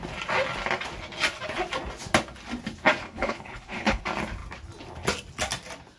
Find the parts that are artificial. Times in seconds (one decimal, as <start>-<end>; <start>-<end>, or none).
3.0-4.0